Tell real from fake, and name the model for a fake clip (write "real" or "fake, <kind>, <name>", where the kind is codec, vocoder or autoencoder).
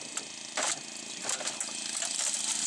real